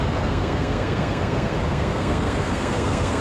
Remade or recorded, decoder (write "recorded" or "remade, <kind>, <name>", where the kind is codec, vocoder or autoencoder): remade, codec, SNAC